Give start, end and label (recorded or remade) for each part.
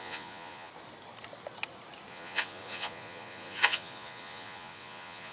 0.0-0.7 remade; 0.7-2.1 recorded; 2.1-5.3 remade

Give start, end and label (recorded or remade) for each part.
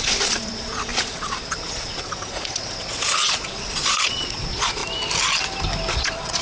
0.0-4.8 remade; 4.8-5.9 recorded; 5.9-6.4 remade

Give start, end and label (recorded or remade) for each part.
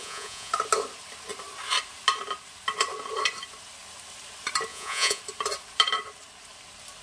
0.0-0.5 remade; 0.5-4.7 recorded; 4.7-5.2 remade; 5.2-7.0 recorded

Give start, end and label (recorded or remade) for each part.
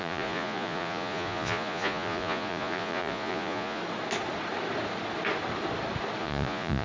0.0-3.8 remade; 3.8-6.2 recorded; 6.2-6.8 remade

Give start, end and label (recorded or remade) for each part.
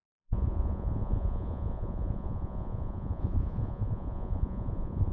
0.0-5.1 remade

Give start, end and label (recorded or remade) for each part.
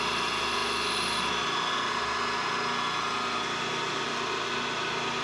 0.0-5.2 recorded